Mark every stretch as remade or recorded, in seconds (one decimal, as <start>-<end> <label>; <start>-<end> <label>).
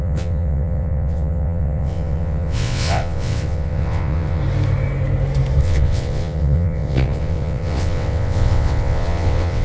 0.0-4.4 remade; 4.4-5.6 recorded; 5.6-9.6 remade